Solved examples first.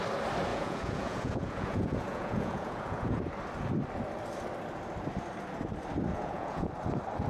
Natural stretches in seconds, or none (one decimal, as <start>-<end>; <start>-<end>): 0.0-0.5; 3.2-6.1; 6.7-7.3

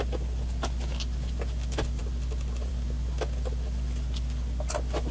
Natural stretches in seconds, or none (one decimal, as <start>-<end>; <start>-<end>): 0.0-5.1

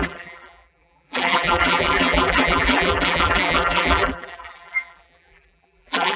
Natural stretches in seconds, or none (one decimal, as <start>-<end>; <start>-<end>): none

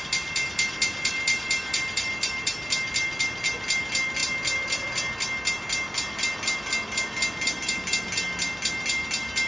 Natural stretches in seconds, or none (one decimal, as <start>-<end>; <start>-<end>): 0.0-9.5